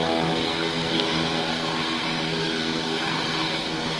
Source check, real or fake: fake